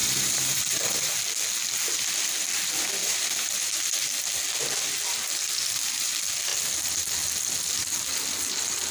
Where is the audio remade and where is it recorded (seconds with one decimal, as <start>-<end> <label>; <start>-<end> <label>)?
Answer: 0.0-1.1 remade; 1.1-3.0 recorded; 3.0-3.5 remade; 3.5-8.9 recorded